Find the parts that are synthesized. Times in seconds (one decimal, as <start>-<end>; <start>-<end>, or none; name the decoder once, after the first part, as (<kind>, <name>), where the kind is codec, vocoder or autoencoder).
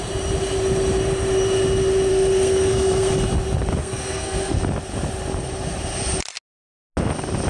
2.1-3.1 (codec, SNAC); 3.8-4.6